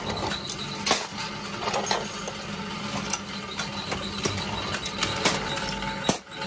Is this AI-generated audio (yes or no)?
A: no